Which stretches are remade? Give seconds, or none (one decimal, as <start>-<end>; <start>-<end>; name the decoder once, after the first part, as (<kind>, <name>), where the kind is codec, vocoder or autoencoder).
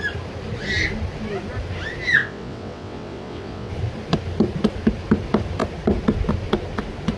2.2-3.7 (vocoder, WaveNeXt)